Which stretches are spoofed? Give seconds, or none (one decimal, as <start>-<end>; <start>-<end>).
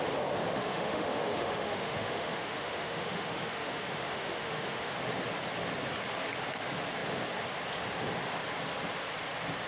0.5-4.9